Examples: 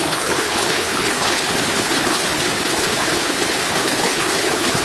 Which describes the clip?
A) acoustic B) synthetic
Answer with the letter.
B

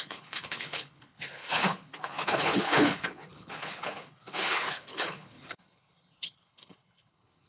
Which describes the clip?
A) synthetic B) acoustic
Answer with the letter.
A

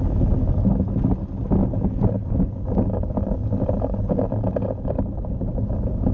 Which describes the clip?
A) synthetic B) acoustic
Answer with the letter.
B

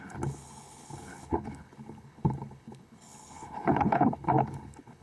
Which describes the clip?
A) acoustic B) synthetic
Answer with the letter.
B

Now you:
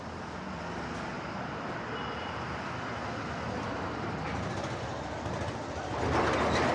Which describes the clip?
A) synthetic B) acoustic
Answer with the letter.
B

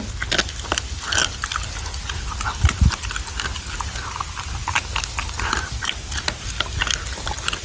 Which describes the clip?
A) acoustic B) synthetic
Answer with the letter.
A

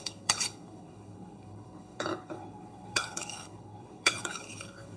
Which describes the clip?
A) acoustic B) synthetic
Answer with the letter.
B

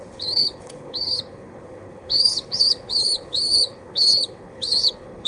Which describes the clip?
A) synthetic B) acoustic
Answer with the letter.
A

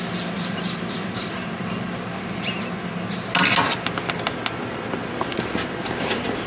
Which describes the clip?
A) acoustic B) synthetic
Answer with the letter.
A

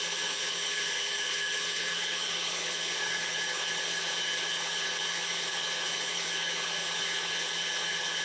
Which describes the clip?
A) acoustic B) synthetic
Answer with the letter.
B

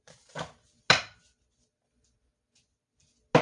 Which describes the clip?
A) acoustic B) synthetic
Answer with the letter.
A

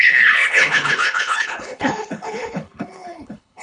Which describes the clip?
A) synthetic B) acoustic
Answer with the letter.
A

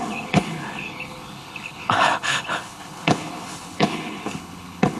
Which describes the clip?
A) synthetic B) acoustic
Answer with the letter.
A